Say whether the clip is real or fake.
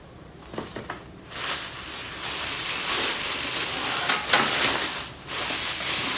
real